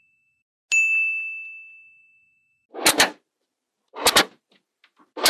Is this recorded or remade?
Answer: recorded